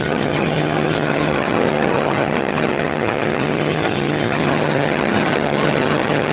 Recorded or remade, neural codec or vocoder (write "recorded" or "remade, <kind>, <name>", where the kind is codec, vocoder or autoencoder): remade, vocoder, HiFi-GAN